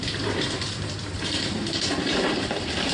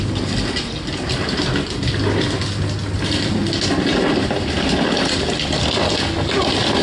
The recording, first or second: second